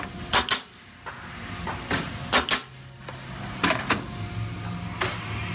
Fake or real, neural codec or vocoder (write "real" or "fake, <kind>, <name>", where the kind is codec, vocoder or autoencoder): real